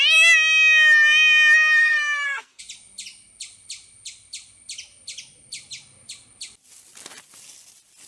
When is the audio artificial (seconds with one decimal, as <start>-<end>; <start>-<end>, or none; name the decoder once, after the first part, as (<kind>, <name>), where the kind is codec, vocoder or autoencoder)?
1.8-2.6 (codec, SNAC)